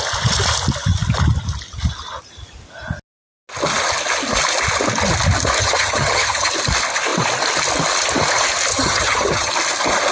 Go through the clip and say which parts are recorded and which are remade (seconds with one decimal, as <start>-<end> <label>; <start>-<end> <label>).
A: 0.0-5.6 recorded; 5.6-6.5 remade; 6.5-8.7 recorded; 8.7-9.5 remade; 9.5-10.1 recorded